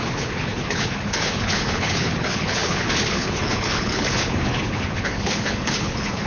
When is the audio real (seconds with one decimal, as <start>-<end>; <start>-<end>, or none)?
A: none